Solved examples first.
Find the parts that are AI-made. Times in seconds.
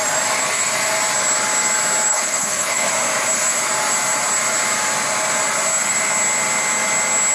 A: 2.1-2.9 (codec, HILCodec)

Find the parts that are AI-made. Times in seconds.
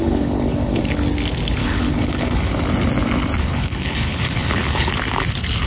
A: 0.0-0.8 (codec, HILCodec); 1.6-2.5; 3.4-4.9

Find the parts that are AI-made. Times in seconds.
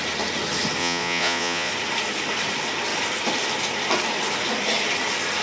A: 0.8-1.7 (vocoder, Vocos)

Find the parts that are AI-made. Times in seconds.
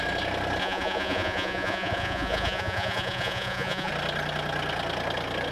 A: 0.6-3.9 (vocoder, Vocos)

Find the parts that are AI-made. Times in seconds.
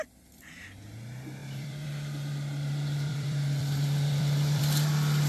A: 1.4-4.6 (vocoder, BigVGAN v2)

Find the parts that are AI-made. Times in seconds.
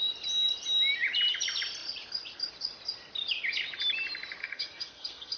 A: 4.4-5.4 (codec, SNAC)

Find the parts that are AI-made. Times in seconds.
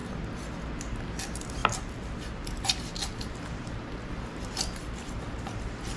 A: none